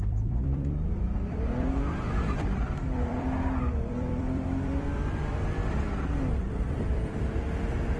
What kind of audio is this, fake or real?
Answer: fake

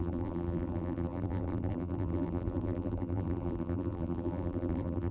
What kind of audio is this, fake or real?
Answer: fake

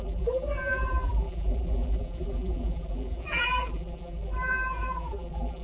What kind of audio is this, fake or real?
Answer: fake